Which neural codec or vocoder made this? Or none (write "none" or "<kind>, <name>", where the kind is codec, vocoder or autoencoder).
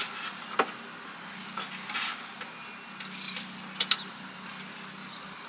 none